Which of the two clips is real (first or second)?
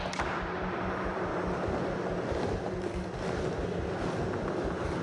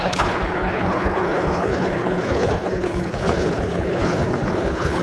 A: first